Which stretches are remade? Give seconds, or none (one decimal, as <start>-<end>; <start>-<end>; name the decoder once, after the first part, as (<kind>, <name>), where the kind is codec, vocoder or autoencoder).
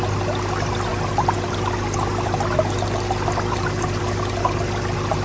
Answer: none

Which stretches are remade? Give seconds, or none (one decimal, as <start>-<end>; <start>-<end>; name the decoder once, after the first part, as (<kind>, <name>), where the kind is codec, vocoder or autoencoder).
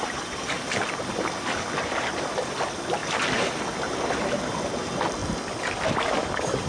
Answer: none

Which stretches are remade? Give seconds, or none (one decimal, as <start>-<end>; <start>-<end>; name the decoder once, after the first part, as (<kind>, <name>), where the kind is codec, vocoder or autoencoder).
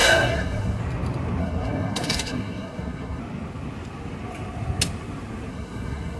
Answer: 0.0-0.8 (codec, SNAC); 1.4-3.2; 5.5-6.2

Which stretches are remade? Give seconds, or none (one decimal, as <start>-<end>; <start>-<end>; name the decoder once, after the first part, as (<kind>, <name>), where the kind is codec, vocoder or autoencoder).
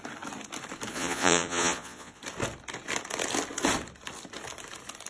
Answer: 0.9-2.2 (vocoder, Vocos)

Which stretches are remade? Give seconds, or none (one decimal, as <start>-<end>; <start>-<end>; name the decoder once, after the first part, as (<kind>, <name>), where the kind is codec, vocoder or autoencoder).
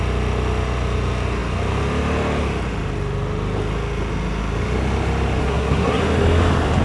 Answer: 5.4-6.0 (codec, SNAC)